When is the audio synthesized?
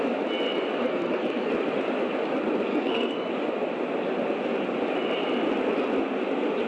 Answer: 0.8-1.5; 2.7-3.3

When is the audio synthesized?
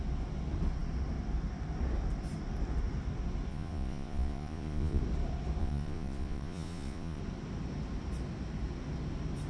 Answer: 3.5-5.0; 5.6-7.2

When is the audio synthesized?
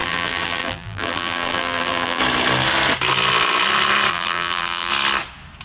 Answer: 0.0-2.2; 4.1-4.9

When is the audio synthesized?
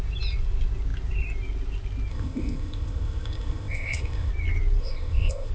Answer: 2.1-4.3; 4.8-5.5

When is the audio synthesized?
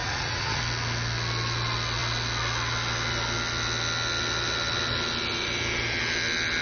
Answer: 0.0-0.6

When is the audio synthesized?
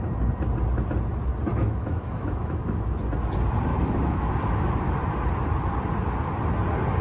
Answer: 1.5-3.0; 3.7-4.3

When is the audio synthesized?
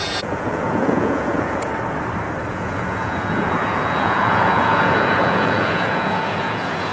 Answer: 0.0-1.7; 2.5-6.9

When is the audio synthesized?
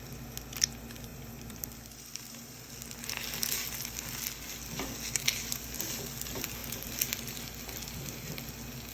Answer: 1.1-2.7